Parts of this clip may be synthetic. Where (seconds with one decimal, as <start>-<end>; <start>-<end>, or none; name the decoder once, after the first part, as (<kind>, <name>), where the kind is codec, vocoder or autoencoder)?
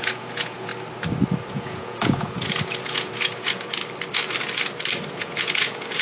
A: 0.0-0.7 (vocoder, Vocos); 1.5-3.8; 5.1-6.0